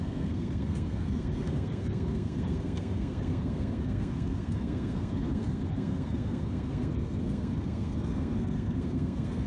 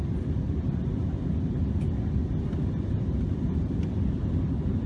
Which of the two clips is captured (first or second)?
second